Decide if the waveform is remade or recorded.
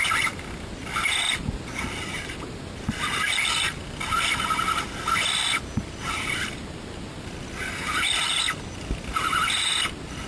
recorded